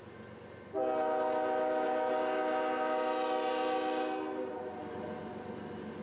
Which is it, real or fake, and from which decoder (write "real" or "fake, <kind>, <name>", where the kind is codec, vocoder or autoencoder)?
real